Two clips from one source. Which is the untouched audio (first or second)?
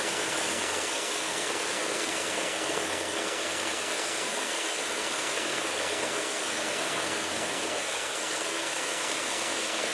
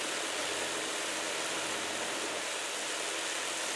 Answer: second